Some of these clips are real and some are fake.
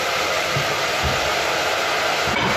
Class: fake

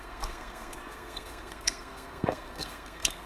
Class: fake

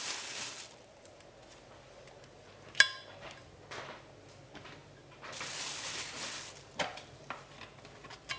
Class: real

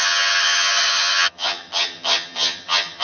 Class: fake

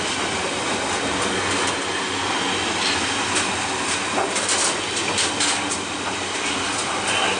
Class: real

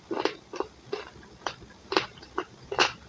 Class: fake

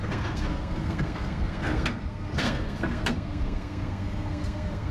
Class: fake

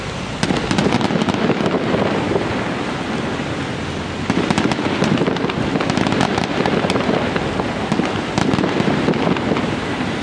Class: real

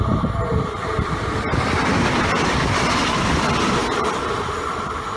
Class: real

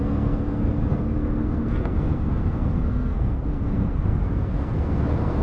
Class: fake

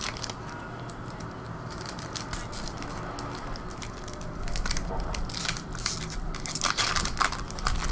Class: real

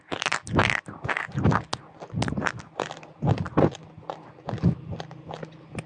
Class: real